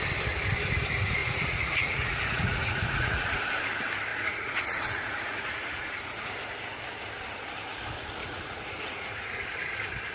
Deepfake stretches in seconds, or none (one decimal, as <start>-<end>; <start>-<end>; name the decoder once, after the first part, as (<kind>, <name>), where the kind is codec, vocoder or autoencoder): 1.2-3.5 (vocoder, Vocos); 4.1-6.3; 8.2-9.7